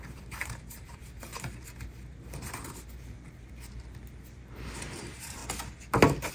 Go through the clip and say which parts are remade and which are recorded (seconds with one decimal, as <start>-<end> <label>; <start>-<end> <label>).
0.0-1.3 remade; 1.3-4.9 recorded; 4.9-5.4 remade; 5.4-6.3 recorded